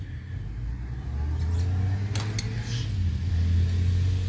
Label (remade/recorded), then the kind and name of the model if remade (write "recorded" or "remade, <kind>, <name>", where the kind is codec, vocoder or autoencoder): recorded